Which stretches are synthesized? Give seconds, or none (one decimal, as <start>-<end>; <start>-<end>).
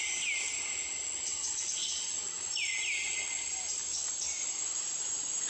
3.8-4.6